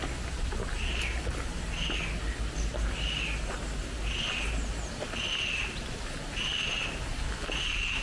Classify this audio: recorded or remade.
recorded